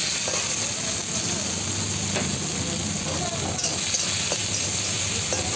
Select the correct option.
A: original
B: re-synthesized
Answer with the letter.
A